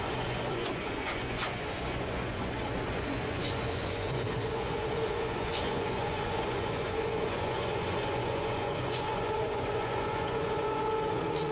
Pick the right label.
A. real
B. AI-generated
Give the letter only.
B